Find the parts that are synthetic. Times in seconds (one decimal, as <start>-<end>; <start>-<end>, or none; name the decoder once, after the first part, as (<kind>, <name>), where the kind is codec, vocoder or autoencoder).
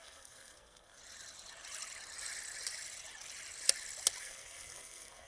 0.0-1.0 (codec, SNAC); 4.2-5.3